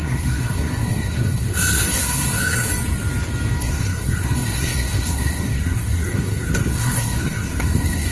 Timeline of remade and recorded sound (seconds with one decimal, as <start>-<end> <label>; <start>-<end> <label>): 0.0-2.7 remade; 2.7-3.6 recorded; 3.6-8.1 remade